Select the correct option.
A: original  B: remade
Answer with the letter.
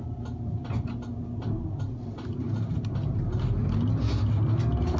A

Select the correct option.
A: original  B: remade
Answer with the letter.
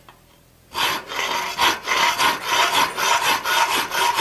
A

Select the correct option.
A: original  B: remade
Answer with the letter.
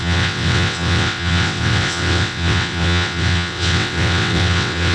B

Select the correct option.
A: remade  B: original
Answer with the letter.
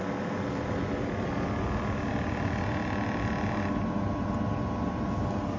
B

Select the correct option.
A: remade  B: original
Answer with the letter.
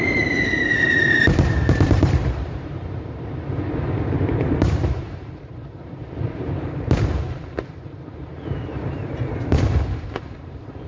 A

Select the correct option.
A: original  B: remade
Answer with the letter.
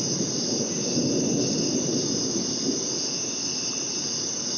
A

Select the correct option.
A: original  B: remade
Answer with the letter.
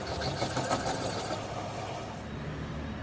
A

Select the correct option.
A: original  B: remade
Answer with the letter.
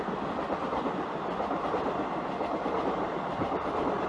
A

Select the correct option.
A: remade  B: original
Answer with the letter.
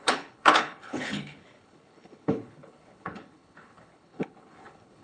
A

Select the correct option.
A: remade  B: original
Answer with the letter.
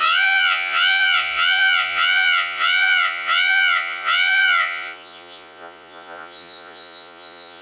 A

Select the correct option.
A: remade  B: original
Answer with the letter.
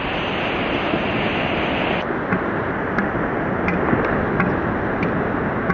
B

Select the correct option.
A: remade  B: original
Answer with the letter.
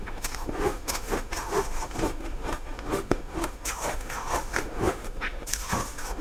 A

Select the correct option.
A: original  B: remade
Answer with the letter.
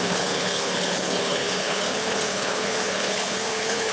B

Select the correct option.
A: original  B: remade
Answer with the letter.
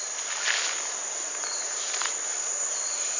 A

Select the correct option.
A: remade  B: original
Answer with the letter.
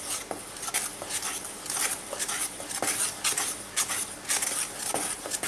B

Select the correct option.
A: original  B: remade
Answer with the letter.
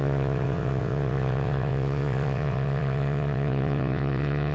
B